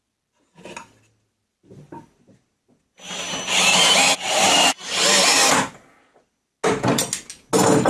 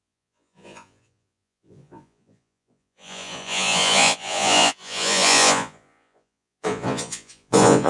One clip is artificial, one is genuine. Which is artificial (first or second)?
second